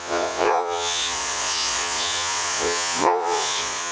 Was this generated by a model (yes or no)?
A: yes